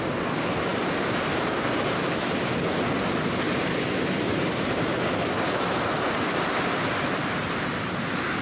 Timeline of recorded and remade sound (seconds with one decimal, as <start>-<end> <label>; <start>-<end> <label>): 0.0-4.3 recorded; 4.3-6.8 remade; 6.8-8.4 recorded